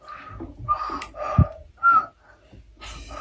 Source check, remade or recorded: recorded